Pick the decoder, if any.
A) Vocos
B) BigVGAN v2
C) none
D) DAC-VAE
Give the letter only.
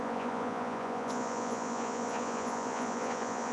A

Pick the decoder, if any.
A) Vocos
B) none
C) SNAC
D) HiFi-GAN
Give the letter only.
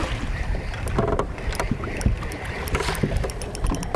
B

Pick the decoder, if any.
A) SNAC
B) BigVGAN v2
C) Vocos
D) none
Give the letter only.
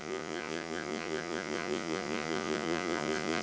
C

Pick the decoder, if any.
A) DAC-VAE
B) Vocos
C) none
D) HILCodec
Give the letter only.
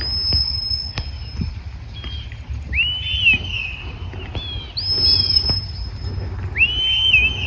C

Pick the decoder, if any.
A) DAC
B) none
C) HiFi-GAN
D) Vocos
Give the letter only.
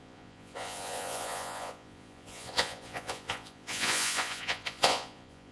D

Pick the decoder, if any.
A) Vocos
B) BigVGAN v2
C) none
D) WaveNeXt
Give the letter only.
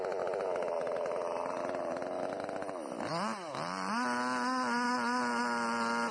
C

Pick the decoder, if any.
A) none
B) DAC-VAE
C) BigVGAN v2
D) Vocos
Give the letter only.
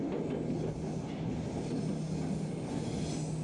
A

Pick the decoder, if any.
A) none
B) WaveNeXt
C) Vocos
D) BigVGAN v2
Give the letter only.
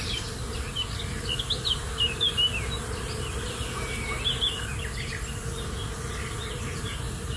A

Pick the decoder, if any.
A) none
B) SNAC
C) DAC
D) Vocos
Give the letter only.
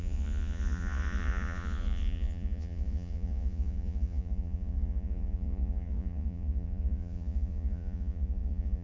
D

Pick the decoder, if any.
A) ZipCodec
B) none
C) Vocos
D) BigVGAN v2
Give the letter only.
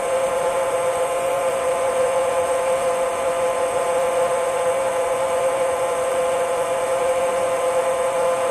C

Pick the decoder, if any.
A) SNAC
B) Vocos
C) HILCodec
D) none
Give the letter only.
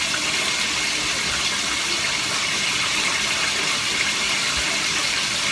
D